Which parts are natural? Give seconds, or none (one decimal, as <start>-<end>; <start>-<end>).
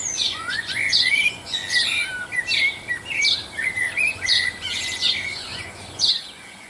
1.6-4.1